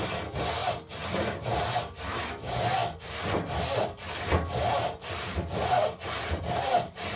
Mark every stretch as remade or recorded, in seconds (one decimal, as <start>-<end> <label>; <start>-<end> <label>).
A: 0.0-2.8 recorded; 2.8-6.4 remade; 6.4-7.2 recorded